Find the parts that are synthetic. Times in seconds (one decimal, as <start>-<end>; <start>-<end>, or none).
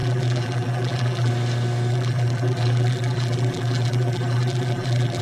0.0-1.3; 1.9-5.2